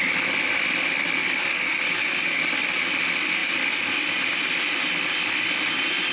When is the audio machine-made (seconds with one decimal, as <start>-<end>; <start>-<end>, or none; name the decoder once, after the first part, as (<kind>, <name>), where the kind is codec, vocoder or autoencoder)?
1.2-2.4 (codec, DAC)